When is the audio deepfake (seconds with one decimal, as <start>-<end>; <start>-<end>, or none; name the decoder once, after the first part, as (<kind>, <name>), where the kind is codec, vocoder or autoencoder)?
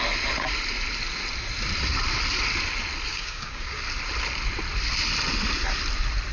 3.1-3.8 (codec, DAC)